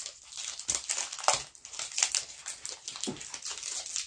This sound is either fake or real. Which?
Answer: real